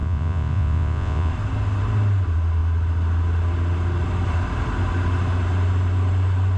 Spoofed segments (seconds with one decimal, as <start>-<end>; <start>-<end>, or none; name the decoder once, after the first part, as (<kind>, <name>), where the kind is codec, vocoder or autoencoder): 0.0-1.3 (vocoder, Vocos)